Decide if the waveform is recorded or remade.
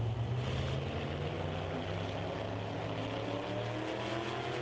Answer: recorded